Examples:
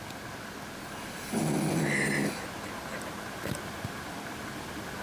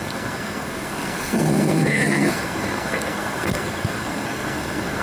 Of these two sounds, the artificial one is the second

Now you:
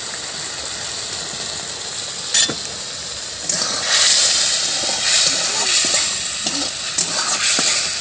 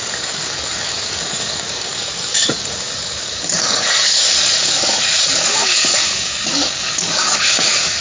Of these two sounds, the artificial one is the second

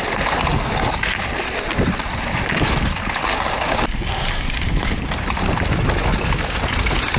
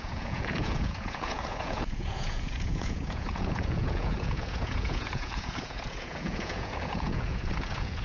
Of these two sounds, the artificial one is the second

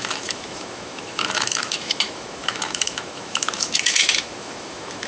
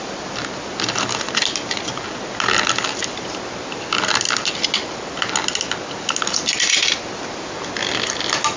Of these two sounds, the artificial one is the first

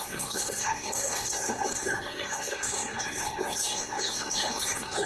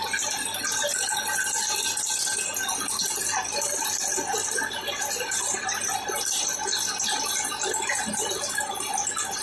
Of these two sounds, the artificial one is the first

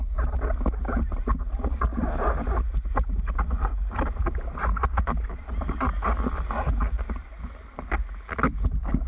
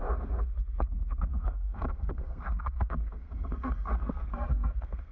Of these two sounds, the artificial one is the second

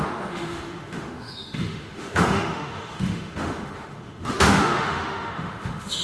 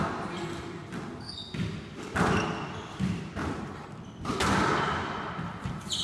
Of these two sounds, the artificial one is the first